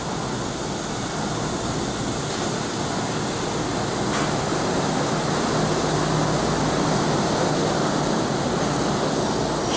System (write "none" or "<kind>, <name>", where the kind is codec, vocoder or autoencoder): none